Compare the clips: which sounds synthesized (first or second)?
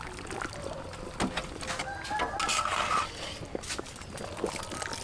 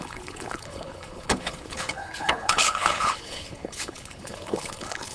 second